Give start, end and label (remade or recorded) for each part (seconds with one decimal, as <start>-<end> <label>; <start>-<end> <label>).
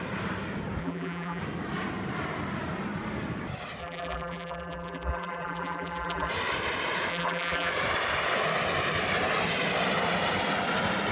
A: 0.0-0.8 recorded; 0.8-1.4 remade; 1.4-3.8 recorded; 3.8-6.3 remade; 6.3-7.1 recorded; 7.1-7.7 remade; 7.7-11.1 recorded